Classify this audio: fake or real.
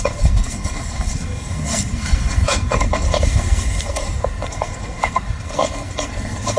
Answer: fake